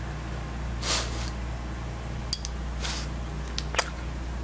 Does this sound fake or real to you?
real